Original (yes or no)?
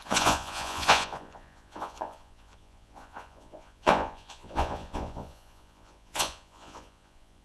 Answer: no